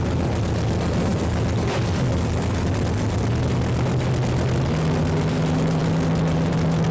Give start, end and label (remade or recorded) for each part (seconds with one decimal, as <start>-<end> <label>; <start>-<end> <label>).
0.0-6.9 recorded